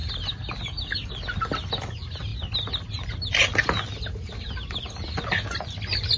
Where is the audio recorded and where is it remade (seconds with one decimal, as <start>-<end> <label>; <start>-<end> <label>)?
0.0-6.2 recorded